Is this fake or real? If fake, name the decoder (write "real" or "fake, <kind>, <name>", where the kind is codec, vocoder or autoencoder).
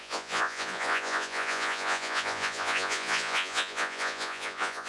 fake, vocoder, Vocos